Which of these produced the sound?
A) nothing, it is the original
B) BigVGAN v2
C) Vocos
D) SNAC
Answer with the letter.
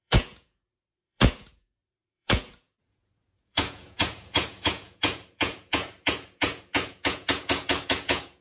C